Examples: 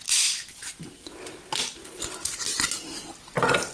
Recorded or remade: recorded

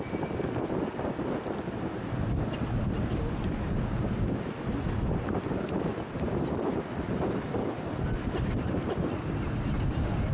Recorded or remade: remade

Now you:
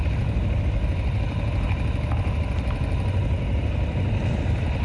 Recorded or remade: recorded